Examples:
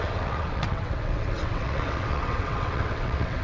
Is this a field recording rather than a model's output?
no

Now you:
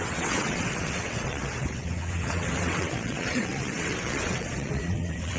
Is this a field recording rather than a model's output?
no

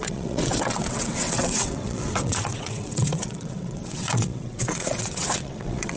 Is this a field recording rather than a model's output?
no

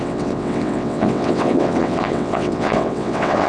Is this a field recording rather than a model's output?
no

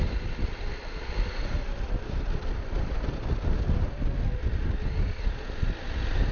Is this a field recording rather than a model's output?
yes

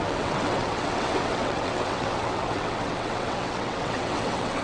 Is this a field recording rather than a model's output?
no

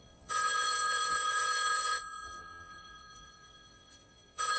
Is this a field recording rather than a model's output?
no